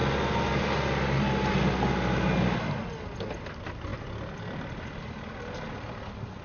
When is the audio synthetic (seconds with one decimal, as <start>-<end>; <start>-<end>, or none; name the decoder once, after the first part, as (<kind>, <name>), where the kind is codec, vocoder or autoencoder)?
none